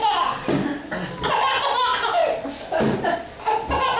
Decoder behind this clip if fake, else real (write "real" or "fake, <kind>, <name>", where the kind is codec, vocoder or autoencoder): real